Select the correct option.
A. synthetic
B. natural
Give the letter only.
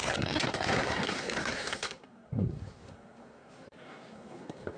A